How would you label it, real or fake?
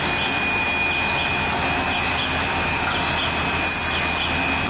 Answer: real